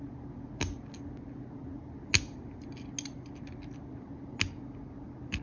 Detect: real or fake real